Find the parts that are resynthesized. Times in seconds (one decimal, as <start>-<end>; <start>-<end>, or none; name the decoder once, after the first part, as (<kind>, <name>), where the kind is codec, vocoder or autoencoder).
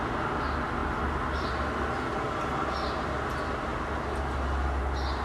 none